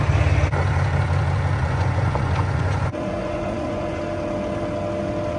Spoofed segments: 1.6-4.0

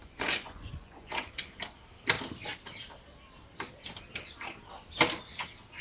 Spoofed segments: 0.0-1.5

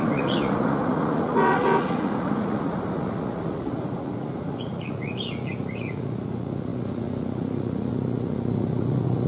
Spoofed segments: 0.0-9.3